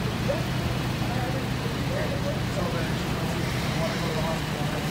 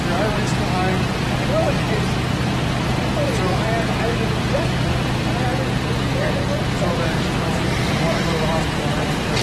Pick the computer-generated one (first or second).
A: first